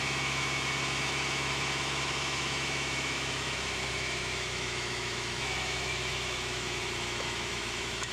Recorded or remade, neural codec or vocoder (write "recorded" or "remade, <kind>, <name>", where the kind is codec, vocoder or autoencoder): remade, autoencoder, DAC-VAE